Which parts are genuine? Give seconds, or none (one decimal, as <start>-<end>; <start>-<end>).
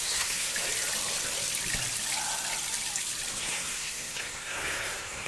0.5-3.3